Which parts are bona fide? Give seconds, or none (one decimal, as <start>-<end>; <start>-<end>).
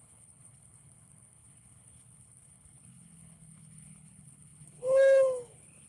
none